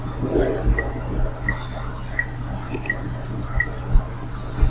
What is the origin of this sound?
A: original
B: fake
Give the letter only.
A